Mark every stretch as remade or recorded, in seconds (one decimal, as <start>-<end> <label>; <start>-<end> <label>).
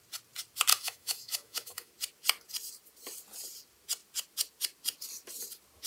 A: 0.0-0.7 recorded; 0.7-1.9 remade; 1.9-5.9 recorded